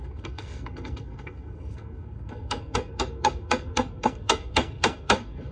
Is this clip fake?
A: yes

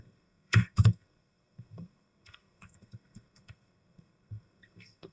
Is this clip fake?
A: yes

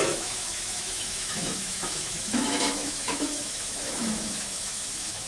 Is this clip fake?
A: yes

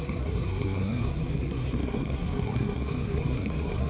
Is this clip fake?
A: yes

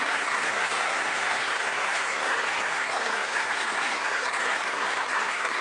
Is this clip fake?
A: yes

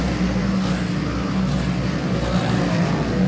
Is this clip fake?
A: no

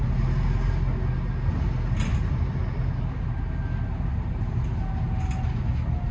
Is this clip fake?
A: no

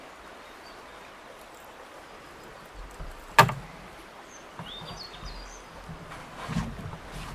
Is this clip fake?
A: no